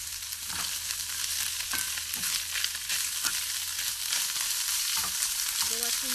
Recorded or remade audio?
recorded